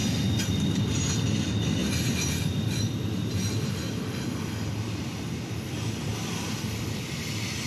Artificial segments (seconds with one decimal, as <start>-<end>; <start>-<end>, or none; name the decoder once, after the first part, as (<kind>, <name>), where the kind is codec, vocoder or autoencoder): 0.0-0.8 (vocoder, BigVGAN v2); 1.8-3.3; 6.1-7.0